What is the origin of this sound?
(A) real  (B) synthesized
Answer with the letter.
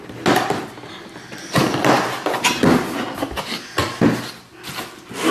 A